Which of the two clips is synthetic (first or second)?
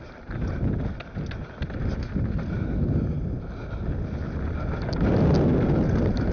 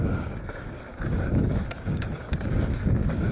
second